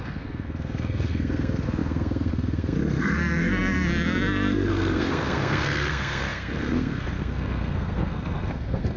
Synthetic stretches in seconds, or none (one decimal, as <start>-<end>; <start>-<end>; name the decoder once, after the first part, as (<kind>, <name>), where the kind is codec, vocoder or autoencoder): 0.0-9.0 (codec, SNAC)